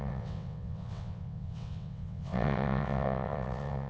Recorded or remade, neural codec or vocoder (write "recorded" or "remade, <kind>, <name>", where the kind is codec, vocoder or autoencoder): remade, vocoder, WaveNeXt